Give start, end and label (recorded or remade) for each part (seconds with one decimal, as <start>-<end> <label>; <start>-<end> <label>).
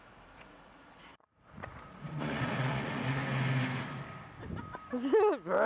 0.0-3.2 remade; 3.2-5.7 recorded